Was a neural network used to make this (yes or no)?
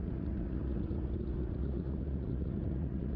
yes